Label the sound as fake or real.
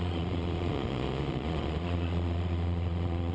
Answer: fake